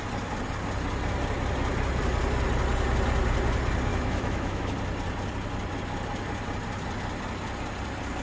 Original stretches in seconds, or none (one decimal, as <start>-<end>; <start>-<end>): 0.0-3.9; 4.7-8.2